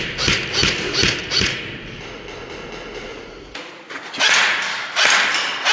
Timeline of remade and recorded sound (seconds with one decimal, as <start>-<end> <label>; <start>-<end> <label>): 0.0-1.2 recorded; 1.2-1.7 remade; 1.7-3.1 recorded; 3.1-4.6 remade; 4.6-5.7 recorded

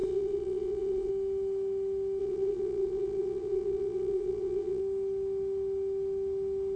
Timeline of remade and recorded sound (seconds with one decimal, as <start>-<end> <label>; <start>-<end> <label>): 0.0-1.1 remade; 1.1-2.2 recorded; 2.2-4.8 remade; 4.8-6.8 recorded

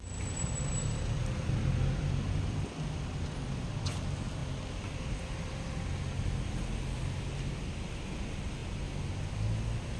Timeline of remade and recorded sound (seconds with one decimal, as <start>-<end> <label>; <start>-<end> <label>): 0.0-10.0 recorded

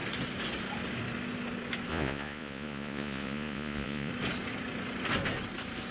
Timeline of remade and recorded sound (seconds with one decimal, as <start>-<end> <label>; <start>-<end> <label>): 0.0-1.9 recorded; 1.9-4.1 remade; 4.1-5.9 recorded

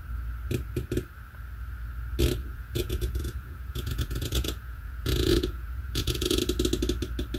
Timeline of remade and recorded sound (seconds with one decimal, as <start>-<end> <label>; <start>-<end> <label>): 0.0-2.4 recorded; 2.4-6.4 remade; 6.4-7.4 recorded

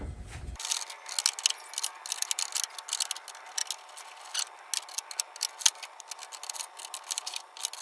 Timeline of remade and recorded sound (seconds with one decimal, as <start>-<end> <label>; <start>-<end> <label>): 0.0-7.8 recorded

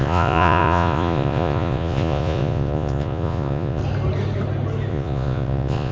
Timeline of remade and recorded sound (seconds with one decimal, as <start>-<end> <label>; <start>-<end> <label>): 0.0-3.8 remade; 3.8-4.9 recorded; 4.9-5.9 remade